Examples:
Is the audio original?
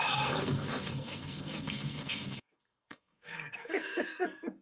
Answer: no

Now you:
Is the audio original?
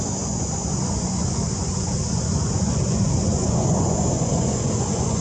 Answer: no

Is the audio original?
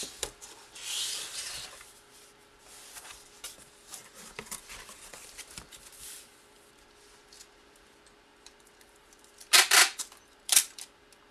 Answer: no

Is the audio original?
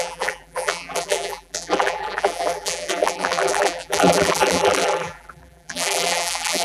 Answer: no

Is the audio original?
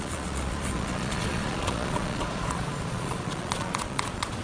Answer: no